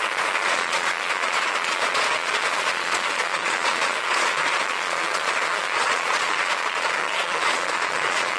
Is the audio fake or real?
fake